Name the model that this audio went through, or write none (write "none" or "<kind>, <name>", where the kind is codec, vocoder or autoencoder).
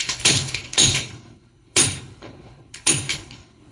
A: codec, HILCodec